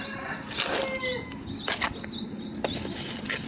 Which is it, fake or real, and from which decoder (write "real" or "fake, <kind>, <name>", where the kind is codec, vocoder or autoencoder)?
real